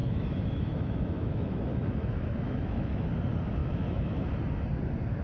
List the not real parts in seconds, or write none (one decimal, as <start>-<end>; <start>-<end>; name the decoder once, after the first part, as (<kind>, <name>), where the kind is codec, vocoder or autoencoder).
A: 0.0-3.1 (autoencoder, DAC-VAE); 3.6-4.3